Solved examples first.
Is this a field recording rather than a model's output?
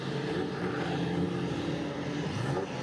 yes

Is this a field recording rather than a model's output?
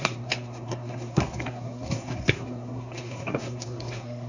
no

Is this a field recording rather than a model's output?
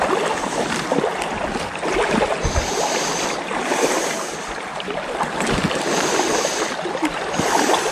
yes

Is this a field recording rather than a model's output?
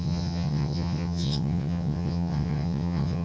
no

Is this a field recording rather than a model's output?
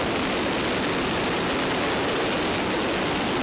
yes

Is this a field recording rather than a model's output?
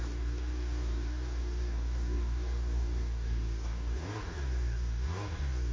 no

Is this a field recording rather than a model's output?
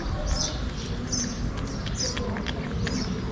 yes